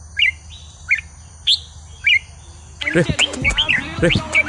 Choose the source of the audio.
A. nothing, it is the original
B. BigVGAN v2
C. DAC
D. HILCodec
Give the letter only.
A